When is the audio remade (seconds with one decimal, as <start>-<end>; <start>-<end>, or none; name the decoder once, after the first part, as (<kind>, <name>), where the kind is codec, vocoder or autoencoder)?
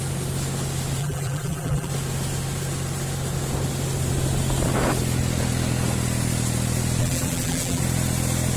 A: 1.0-1.9 (vocoder, BigVGAN v2); 7.0-7.8